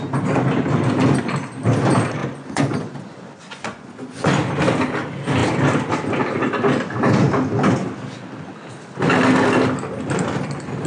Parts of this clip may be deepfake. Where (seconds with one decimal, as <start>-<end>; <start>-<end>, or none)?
2.2-4.3